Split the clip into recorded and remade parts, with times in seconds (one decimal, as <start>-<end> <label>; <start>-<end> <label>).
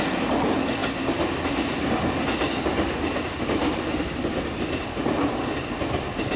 0.0-6.4 recorded